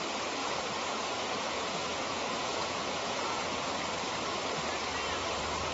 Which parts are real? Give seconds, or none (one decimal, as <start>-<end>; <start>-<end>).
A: 0.0-0.4; 3.7-5.7